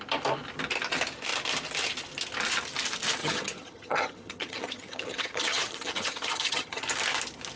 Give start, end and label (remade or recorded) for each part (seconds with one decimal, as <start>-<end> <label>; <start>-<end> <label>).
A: 0.0-3.2 recorded; 3.2-6.8 remade; 6.8-7.6 recorded